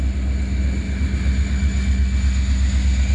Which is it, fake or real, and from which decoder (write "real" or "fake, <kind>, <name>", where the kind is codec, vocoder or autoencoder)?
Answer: real